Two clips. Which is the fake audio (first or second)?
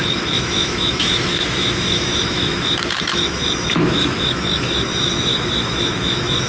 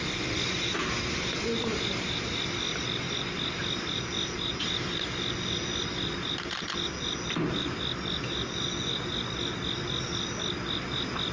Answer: first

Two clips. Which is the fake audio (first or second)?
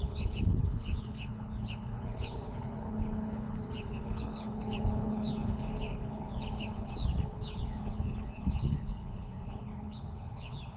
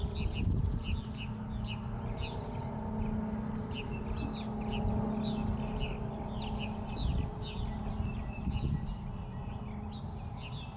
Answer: first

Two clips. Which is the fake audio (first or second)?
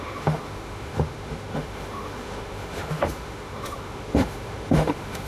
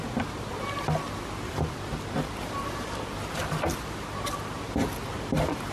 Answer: first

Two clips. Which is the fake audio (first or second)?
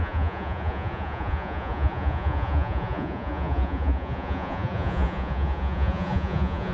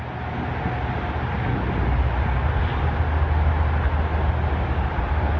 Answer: first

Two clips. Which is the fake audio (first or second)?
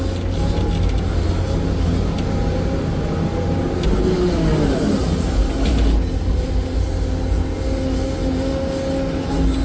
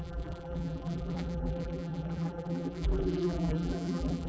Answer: second